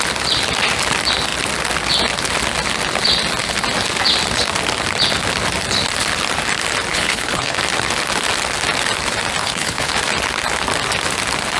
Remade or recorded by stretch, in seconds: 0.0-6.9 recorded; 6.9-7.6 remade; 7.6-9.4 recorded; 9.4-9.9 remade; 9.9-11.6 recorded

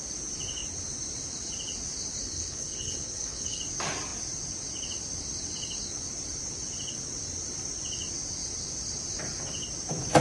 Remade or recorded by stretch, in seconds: 0.0-2.2 recorded; 2.2-3.6 remade; 3.6-10.2 recorded

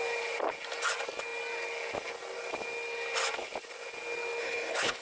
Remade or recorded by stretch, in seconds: 0.0-4.4 recorded; 4.4-5.0 remade

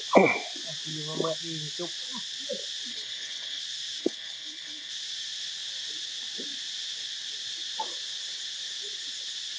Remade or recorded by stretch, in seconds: 0.0-2.9 recorded; 2.9-3.6 remade; 3.6-4.0 recorded; 4.0-4.9 remade; 4.9-9.6 recorded

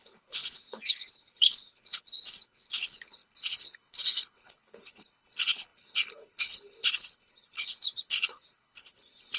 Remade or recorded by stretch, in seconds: 0.0-9.4 remade

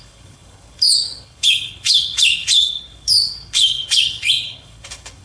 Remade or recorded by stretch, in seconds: 0.0-5.2 remade

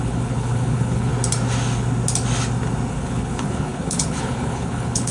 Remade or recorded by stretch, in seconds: 0.0-1.1 remade; 1.1-2.9 recorded; 2.9-5.1 remade